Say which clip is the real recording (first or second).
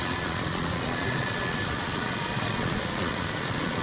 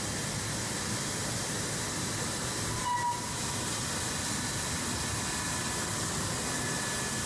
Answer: second